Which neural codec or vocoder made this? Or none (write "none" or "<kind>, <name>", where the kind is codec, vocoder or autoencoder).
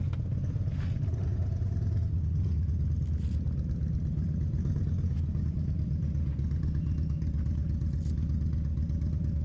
none